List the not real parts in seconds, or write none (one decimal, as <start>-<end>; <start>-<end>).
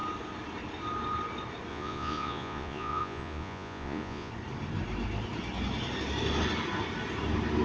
1.7-4.3